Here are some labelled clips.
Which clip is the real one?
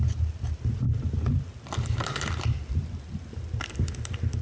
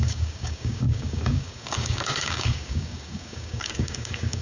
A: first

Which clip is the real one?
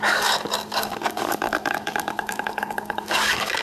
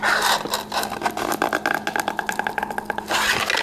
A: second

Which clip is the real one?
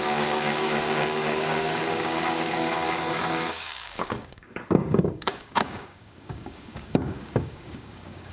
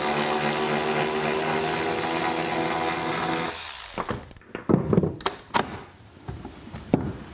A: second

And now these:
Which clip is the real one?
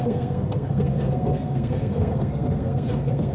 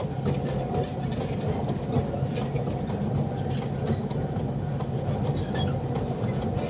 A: second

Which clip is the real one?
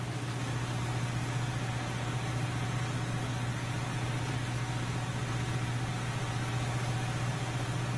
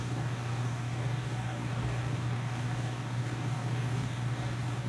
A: first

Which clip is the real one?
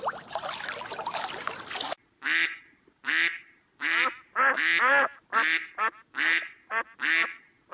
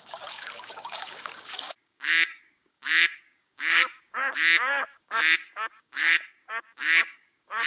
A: first